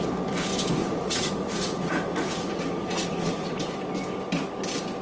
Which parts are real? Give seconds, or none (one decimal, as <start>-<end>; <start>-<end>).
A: 0.0-0.8; 3.6-5.0